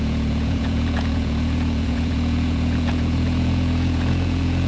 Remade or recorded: remade